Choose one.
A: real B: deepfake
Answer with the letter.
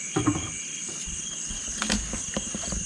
A